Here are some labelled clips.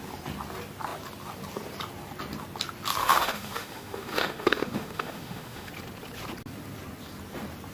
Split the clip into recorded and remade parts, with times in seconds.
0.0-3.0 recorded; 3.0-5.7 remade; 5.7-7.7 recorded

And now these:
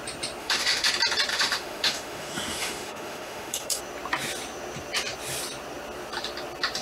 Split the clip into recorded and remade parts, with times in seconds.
0.0-0.4 recorded; 0.4-0.9 remade; 0.9-1.3 recorded; 1.3-3.8 remade; 3.8-6.8 recorded

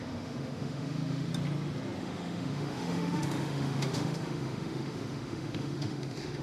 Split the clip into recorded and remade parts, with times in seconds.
0.0-1.3 remade; 1.3-2.0 recorded; 2.0-6.4 remade

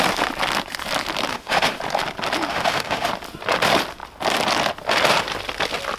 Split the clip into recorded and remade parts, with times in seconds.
0.0-1.3 recorded; 1.3-1.8 remade; 1.8-2.5 recorded; 2.5-3.1 remade; 3.1-6.0 recorded

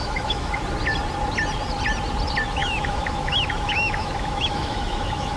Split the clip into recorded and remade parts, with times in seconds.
0.0-0.6 remade; 0.6-2.6 recorded; 2.6-5.4 remade